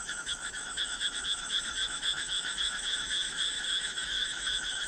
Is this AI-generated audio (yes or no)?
yes